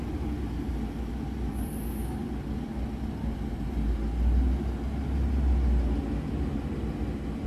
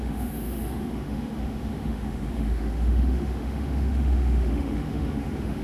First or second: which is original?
first